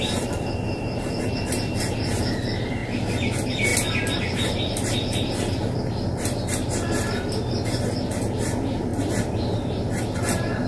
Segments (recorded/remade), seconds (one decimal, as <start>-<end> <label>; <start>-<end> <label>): 0.0-2.8 remade; 2.8-3.3 recorded; 3.3-10.7 remade